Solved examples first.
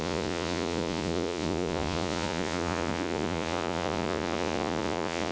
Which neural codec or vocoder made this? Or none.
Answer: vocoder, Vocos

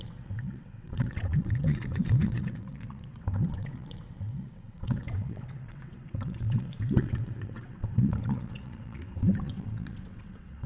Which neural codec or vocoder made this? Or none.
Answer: vocoder, WaveNeXt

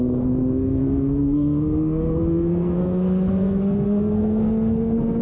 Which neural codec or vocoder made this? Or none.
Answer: codec, SNAC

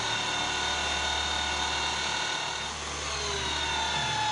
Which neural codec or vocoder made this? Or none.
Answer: none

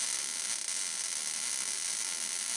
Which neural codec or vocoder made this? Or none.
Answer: none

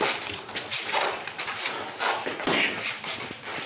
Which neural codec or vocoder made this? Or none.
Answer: none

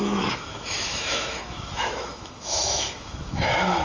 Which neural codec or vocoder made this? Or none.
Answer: autoencoder, DAC-VAE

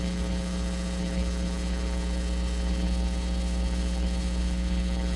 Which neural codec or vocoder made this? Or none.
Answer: codec, HILCodec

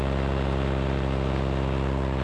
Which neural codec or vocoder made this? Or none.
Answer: none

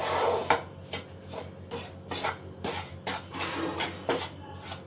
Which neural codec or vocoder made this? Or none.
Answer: none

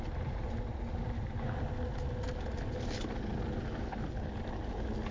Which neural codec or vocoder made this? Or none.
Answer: none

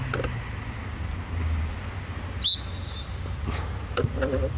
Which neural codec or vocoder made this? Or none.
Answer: none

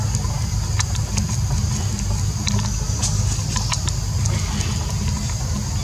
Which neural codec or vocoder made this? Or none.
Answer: none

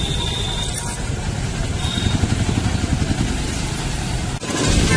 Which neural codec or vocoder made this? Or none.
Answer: none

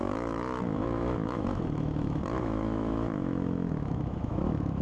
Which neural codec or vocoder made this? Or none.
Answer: autoencoder, DAC-VAE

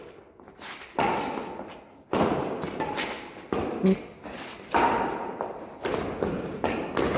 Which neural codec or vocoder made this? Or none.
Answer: none